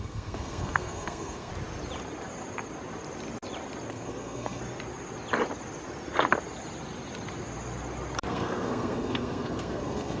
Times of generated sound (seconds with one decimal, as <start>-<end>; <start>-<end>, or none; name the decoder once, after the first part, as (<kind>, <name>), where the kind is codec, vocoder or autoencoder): 0.0-1.5 (codec, SNAC); 3.9-4.6; 8.3-10.2